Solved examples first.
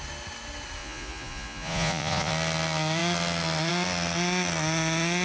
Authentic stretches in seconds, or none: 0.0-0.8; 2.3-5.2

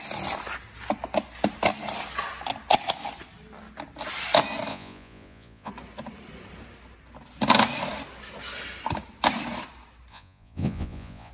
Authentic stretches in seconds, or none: 0.0-4.7; 5.7-10.1

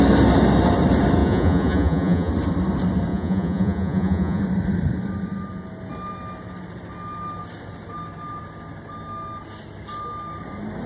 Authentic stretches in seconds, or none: 0.0-1.2; 2.3-3.1; 4.4-10.9

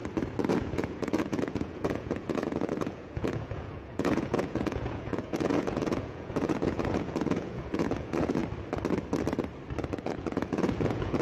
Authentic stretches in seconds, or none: 0.0-0.6; 8.4-10.0

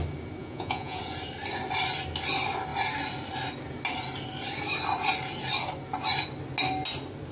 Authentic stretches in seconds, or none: 0.0-0.4; 1.0-7.3